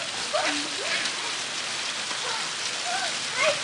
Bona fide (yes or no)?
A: yes